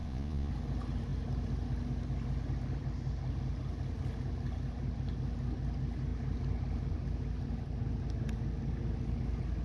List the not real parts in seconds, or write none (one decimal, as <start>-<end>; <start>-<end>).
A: 0.0-0.5